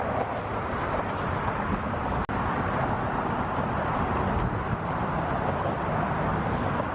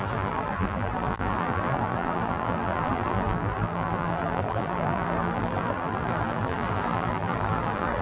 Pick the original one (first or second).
first